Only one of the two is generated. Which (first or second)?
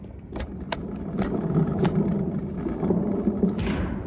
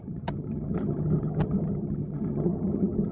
second